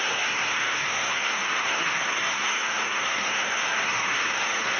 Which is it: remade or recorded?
remade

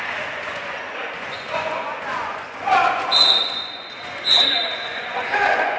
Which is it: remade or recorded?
remade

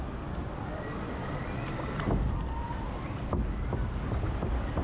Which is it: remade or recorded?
recorded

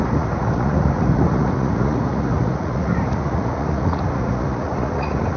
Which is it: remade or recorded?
remade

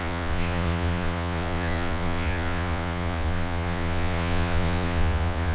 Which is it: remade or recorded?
remade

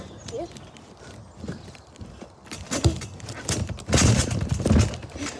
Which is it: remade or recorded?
recorded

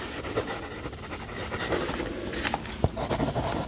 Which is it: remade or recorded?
recorded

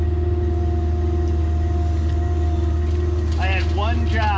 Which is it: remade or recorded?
recorded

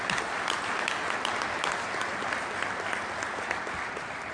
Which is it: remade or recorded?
recorded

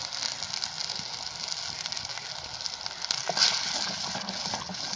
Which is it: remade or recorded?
recorded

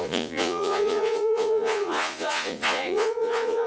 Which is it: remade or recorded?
remade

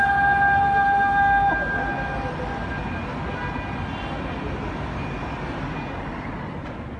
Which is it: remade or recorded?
recorded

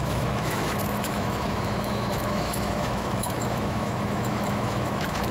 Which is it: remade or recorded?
remade